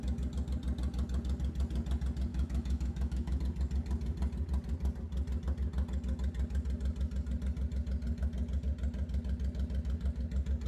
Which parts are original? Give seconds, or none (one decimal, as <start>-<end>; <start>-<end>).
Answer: 0.0-2.3; 3.4-10.7

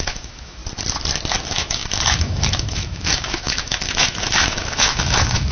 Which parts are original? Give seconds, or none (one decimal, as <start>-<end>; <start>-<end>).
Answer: 0.6-1.4

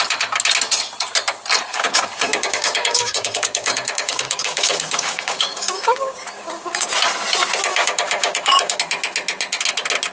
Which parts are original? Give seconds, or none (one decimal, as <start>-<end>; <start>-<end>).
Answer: 0.0-1.7; 6.9-7.7; 8.8-10.1

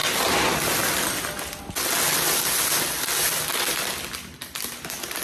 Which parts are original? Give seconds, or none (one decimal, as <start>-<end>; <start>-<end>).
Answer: 0.0-5.2

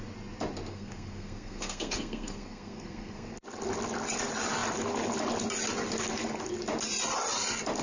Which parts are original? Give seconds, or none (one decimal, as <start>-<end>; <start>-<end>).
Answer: 0.0-0.7; 3.3-7.8

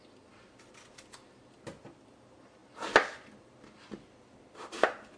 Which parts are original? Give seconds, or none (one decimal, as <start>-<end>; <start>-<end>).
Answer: 0.0-5.2